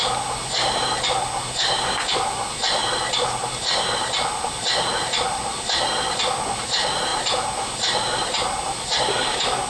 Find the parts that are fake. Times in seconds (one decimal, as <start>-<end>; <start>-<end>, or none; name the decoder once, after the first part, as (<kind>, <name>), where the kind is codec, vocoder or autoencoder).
none